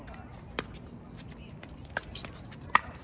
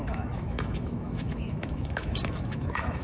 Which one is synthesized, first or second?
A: second